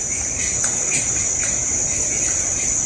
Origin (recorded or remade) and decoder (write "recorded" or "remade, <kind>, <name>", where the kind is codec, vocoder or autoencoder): recorded